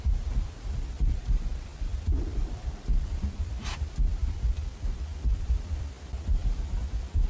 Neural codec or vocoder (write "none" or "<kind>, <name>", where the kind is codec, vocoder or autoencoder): vocoder, BigVGAN v2